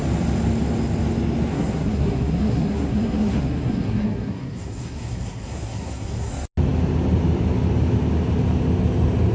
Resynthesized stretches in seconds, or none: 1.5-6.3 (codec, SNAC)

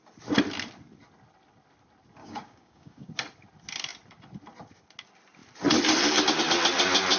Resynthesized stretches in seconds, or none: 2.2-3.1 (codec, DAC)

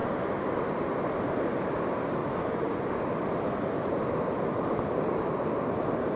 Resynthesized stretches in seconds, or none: 2.2-2.9 (vocoder, Vocos)

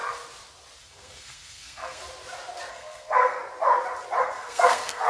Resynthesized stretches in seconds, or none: 0.8-2.0 (codec, SNAC); 2.7-3.4; 4.2-5.1